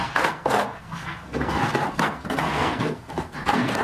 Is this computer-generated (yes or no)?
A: yes